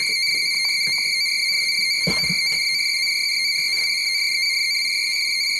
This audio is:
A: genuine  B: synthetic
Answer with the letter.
A